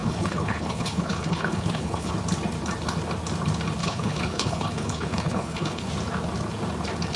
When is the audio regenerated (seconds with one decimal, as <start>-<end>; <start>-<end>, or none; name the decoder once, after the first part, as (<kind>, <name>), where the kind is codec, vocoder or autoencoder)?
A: 0.0-2.1 (codec, HILCodec); 3.8-5.9